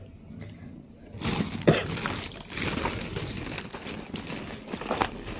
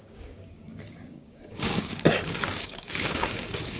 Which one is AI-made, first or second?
second